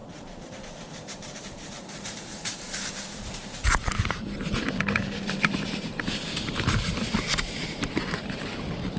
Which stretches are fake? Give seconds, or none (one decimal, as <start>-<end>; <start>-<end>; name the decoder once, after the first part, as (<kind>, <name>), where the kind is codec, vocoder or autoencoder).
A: 0.0-9.0 (vocoder, BigVGAN v2)